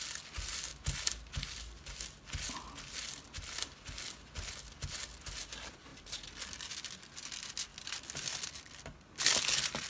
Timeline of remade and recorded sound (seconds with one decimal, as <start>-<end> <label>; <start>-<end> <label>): 0.0-5.9 recorded; 5.9-6.7 remade; 6.7-9.9 recorded